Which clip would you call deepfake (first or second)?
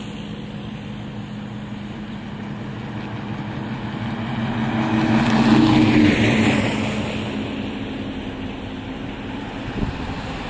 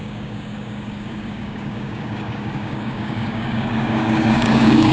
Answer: second